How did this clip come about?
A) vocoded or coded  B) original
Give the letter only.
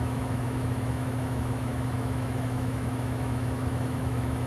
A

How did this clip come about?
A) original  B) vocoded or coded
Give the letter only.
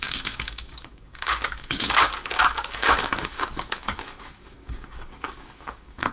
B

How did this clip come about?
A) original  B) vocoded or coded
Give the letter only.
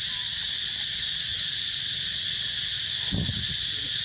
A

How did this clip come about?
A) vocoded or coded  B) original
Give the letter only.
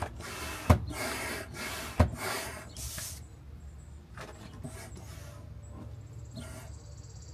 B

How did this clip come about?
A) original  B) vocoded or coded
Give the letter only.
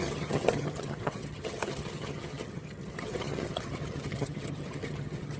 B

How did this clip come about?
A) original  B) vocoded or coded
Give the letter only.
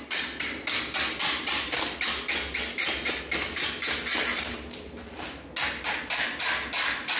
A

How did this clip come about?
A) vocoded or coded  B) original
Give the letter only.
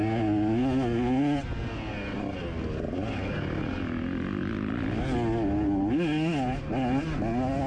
B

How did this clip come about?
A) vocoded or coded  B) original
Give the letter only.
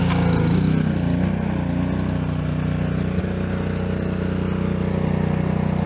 B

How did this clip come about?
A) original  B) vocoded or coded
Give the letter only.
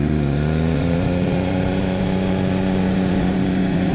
B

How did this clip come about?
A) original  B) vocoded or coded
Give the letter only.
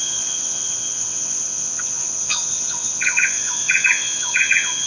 B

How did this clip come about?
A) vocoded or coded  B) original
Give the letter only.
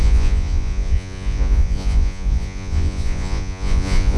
A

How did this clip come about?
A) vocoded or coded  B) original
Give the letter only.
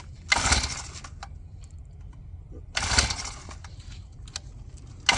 B